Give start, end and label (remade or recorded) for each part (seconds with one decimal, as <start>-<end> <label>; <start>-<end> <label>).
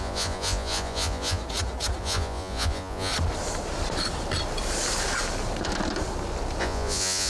0.0-1.4 remade; 1.4-2.0 recorded; 2.0-3.1 remade; 3.1-6.6 recorded; 6.6-7.3 remade